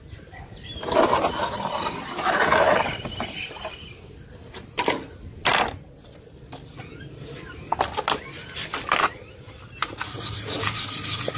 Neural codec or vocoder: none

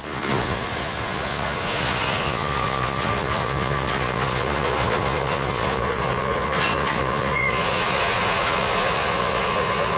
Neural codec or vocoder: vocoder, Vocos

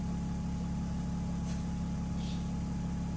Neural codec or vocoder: none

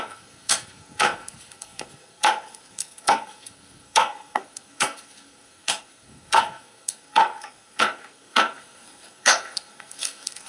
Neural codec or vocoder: codec, SNAC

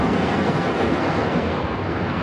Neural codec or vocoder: codec, SNAC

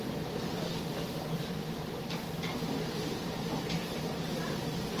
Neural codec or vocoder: vocoder, BigVGAN v2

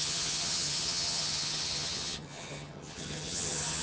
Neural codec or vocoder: vocoder, HiFi-GAN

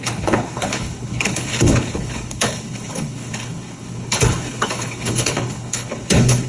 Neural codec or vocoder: codec, HILCodec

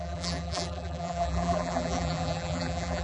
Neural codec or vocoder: vocoder, BigVGAN v2